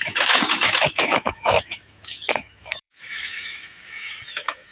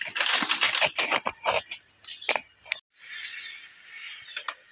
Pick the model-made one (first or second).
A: first